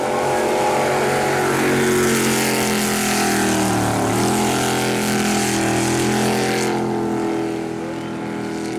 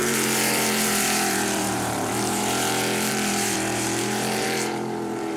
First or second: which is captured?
first